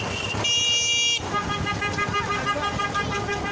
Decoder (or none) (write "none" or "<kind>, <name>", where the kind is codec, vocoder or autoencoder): none